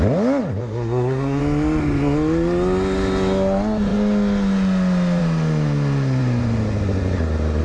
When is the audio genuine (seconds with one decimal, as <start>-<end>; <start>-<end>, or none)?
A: 0.0-0.6; 1.4-7.6